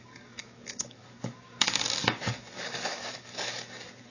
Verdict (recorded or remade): remade